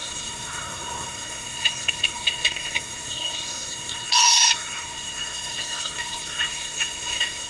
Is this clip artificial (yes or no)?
yes